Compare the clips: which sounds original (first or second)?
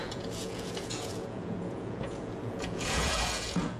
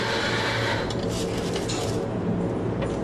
second